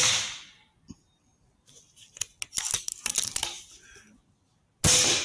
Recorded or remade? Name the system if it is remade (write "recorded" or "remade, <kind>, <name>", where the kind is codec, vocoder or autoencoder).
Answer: recorded